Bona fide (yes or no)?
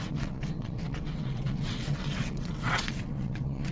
no